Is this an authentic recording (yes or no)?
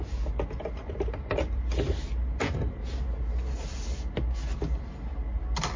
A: yes